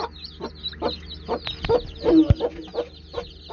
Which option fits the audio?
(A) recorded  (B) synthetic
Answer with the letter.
A